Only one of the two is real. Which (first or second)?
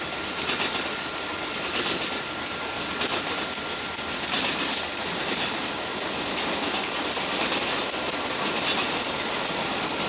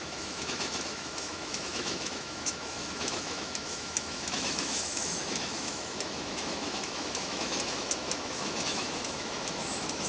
first